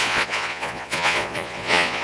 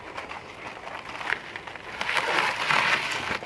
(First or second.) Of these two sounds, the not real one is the first